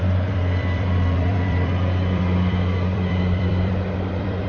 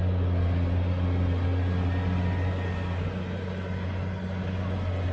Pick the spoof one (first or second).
first